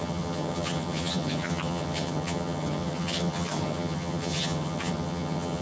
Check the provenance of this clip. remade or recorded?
remade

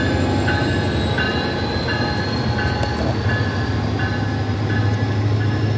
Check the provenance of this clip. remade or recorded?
recorded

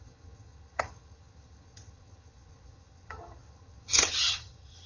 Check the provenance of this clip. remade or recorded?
remade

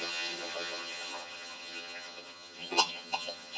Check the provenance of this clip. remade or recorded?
remade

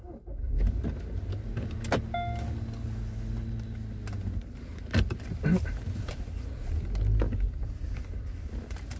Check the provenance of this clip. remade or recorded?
recorded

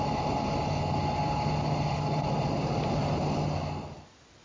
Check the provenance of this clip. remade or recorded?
recorded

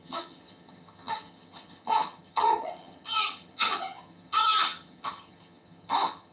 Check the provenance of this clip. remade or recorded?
remade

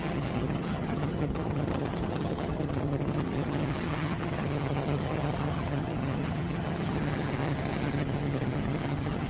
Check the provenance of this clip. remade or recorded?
remade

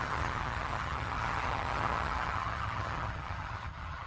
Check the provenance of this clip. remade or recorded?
remade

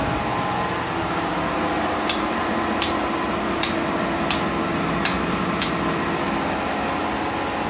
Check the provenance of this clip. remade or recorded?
recorded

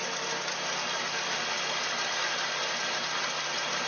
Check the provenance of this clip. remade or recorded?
recorded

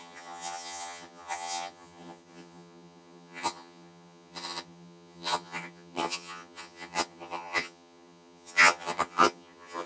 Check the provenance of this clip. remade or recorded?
remade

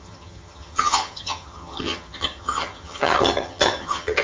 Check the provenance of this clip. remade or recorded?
remade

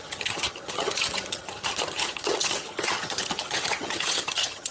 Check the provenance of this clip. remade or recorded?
remade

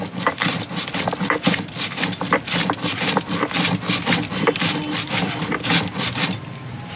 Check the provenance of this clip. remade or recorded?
recorded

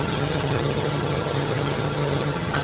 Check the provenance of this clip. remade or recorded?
remade